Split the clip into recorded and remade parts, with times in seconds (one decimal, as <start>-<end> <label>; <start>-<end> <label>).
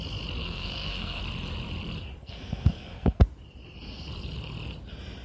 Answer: 0.0-0.4 recorded; 0.4-1.2 remade; 1.2-2.2 recorded; 2.2-3.2 remade; 3.2-5.2 recorded